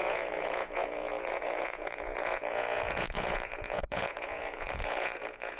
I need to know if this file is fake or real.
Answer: fake